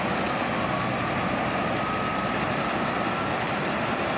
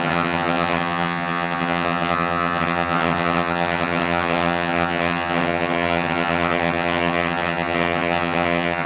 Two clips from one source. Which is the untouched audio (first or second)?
first